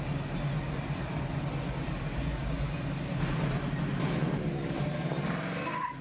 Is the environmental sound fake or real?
real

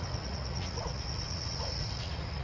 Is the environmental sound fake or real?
fake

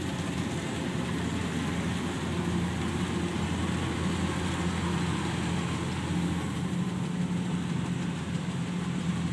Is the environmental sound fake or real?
real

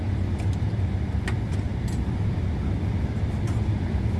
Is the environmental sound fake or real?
real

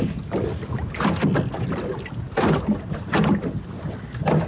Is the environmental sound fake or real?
real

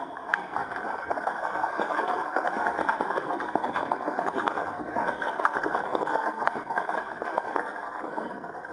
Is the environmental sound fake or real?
fake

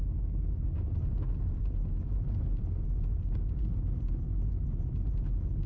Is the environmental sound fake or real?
real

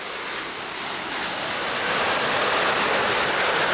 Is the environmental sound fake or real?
real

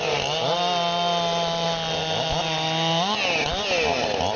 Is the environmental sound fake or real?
real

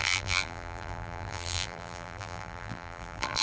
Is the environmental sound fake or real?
fake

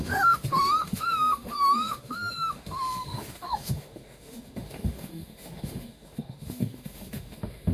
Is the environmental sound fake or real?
fake